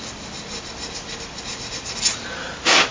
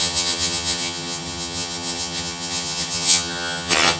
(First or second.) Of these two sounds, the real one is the first